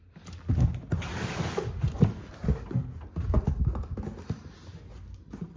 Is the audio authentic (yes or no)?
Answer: yes